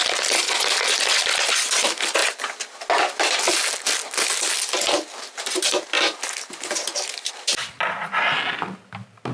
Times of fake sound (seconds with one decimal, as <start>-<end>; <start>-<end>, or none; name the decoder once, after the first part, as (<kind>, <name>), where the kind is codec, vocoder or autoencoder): none